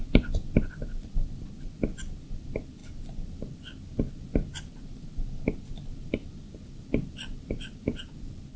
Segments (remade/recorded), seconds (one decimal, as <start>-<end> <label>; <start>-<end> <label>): 0.0-8.6 recorded